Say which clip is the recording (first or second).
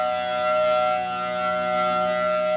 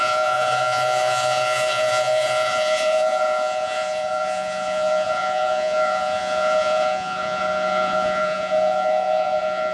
first